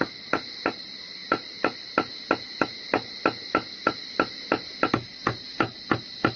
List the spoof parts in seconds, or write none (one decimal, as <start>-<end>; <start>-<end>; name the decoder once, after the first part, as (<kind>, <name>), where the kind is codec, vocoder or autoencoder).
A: none

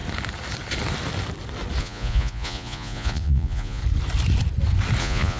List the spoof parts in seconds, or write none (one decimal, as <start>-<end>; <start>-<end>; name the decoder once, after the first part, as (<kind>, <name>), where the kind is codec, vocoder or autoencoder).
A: 1.8-3.8 (vocoder, Vocos); 5.0-5.4

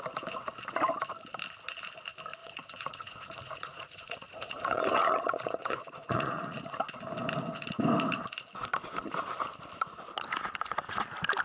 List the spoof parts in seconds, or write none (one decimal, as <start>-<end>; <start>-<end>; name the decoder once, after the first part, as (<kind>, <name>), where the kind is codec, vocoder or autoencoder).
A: 2.4-6.8 (vocoder, Vocos)

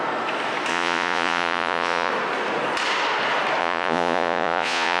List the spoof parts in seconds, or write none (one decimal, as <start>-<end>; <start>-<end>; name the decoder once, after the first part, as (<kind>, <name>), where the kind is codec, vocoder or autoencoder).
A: 0.7-2.1 (vocoder, Vocos); 3.6-5.0